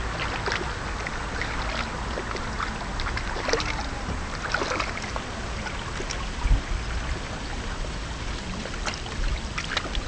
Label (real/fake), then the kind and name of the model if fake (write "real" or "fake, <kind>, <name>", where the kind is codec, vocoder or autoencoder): real